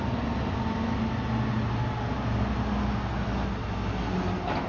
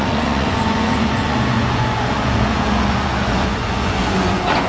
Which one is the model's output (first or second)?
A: second